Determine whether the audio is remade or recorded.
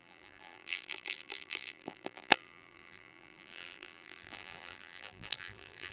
remade